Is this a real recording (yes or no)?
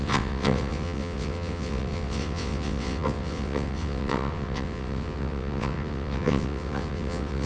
no